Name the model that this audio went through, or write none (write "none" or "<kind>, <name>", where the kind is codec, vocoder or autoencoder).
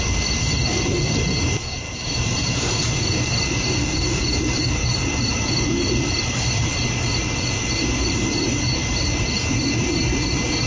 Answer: vocoder, BigVGAN v2